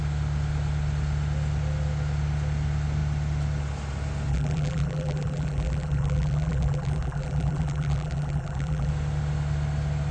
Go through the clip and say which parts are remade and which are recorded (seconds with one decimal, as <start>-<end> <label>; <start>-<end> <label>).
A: 0.0-4.3 recorded; 4.3-8.9 remade; 8.9-10.1 recorded